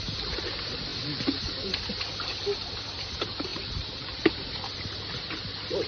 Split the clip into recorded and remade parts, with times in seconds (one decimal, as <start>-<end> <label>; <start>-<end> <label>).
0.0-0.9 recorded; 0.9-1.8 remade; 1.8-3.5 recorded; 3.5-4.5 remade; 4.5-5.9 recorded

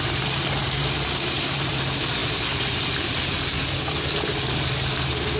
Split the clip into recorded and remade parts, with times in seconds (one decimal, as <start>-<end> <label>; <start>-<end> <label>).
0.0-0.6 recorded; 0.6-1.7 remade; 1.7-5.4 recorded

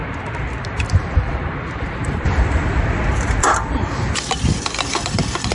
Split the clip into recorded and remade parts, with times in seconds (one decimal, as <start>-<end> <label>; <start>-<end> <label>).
0.0-1.1 recorded; 1.1-5.5 remade